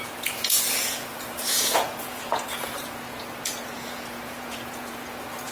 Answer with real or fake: fake